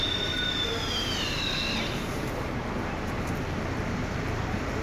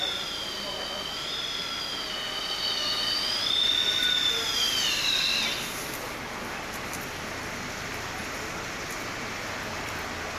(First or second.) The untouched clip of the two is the second